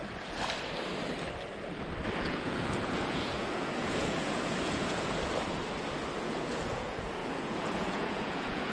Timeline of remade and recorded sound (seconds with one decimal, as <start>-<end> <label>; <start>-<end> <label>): 0.0-2.2 recorded; 2.2-5.6 remade; 5.6-6.2 recorded; 6.2-8.7 remade